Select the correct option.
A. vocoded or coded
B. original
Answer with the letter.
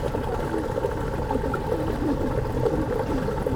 B